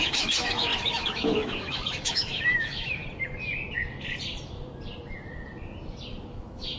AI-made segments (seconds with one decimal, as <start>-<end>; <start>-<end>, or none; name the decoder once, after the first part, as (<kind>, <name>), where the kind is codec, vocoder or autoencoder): 0.0-3.0 (autoencoder, DAC-VAE); 6.3-6.8